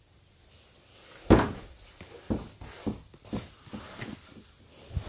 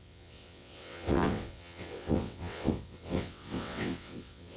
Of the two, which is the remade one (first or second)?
second